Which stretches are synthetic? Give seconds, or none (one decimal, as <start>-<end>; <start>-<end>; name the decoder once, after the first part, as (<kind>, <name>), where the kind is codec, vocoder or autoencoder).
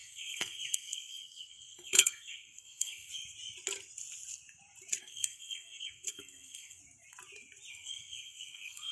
0.0-3.1 (codec, SNAC); 5.0-6.8; 7.7-8.9